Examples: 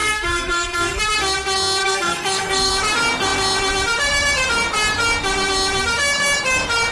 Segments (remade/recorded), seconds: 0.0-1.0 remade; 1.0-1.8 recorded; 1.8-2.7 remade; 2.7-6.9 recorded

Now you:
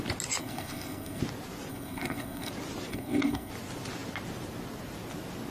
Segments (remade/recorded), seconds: 0.0-0.4 recorded; 0.4-1.2 remade; 1.2-1.7 recorded; 1.7-2.5 remade; 2.5-2.9 recorded; 2.9-3.5 remade; 3.5-5.5 recorded

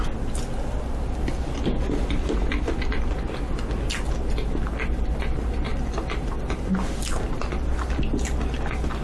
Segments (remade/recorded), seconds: 0.0-9.0 recorded

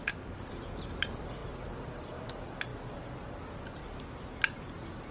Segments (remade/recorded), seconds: 0.0-2.7 remade; 2.7-3.3 recorded; 3.3-3.8 remade; 3.8-5.1 recorded

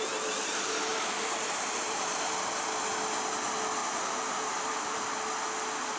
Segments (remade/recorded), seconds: 0.0-0.9 recorded; 0.9-2.3 remade; 2.3-3.8 recorded; 3.8-5.0 remade; 5.0-6.0 recorded

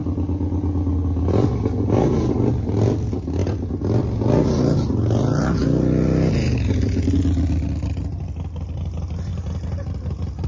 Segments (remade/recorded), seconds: 0.0-10.5 recorded

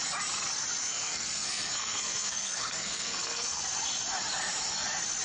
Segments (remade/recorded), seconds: 0.0-0.8 recorded; 0.8-3.6 remade; 3.6-5.2 recorded